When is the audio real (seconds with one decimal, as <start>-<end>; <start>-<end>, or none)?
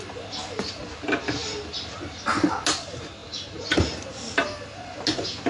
0.0-5.5